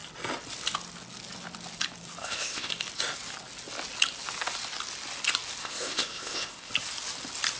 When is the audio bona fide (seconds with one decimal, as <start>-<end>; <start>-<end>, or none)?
0.0-2.2; 2.7-5.6; 6.7-7.6